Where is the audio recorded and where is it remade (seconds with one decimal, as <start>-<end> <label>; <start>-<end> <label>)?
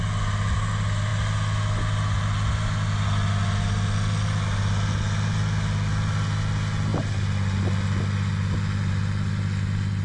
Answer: 0.0-10.0 recorded